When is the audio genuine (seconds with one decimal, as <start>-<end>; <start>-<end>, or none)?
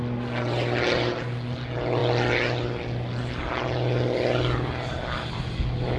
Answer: 0.0-6.0